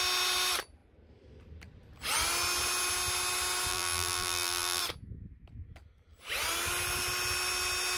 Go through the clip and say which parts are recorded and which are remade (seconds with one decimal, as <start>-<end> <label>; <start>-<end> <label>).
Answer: 0.0-3.7 recorded; 3.7-4.8 remade; 4.8-8.0 recorded